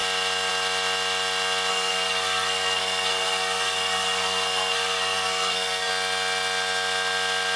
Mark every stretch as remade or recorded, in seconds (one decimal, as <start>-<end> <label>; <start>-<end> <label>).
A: 0.0-1.7 recorded; 1.7-5.9 remade; 5.9-7.6 recorded